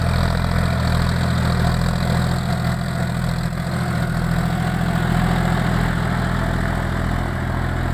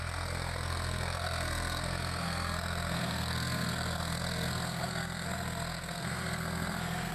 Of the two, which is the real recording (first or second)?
first